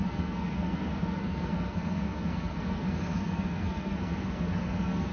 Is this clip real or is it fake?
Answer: fake